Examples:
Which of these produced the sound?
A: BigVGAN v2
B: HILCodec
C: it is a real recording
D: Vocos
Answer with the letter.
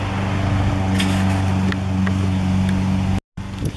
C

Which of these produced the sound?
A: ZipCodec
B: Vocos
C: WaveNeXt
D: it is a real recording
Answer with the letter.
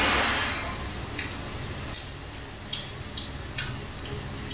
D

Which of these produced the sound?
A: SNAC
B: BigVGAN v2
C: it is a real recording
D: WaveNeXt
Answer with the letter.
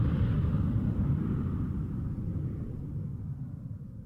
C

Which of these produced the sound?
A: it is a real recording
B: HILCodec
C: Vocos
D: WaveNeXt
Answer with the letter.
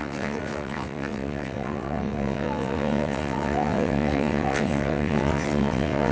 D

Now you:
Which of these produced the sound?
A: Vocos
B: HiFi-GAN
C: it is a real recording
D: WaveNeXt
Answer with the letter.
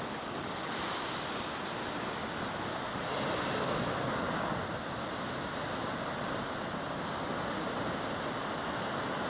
C